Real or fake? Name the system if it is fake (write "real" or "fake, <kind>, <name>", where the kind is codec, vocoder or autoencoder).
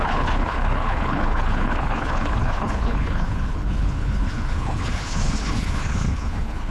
fake, codec, HILCodec